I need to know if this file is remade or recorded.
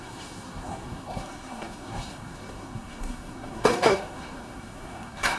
remade